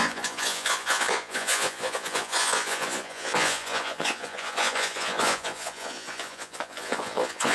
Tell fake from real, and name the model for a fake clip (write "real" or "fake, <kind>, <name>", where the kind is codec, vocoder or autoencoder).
fake, vocoder, Vocos